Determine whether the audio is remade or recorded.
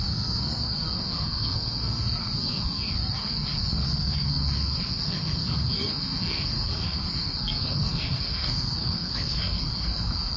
remade